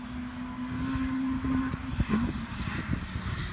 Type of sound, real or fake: real